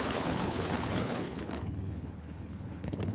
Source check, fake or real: fake